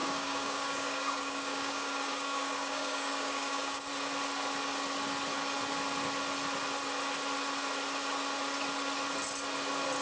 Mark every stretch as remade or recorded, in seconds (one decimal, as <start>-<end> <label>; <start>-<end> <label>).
0.0-3.9 remade; 3.9-10.0 recorded